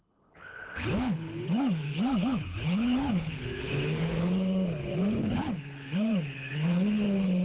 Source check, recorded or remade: remade